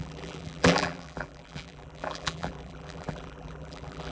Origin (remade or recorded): remade